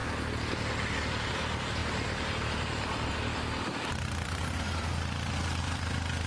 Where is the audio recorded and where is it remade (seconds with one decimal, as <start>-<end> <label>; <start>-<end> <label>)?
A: 0.0-1.3 recorded; 1.3-6.3 remade